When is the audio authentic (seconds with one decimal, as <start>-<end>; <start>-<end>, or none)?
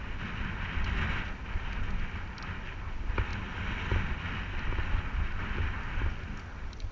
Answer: 0.0-6.9